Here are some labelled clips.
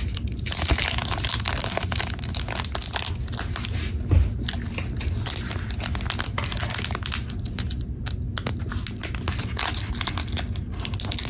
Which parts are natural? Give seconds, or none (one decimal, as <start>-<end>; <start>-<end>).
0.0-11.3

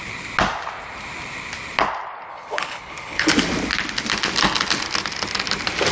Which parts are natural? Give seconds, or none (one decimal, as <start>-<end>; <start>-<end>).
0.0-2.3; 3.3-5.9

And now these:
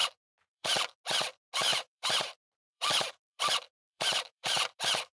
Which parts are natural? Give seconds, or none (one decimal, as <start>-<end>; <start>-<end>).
1.0-1.7; 4.8-5.2

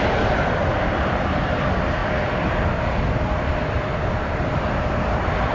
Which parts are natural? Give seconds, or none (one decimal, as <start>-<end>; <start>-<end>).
0.0-5.5

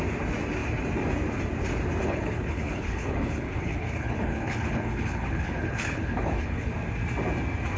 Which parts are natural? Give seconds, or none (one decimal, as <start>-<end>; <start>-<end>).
0.0-2.0; 6.7-7.8